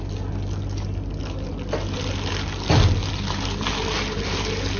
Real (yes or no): yes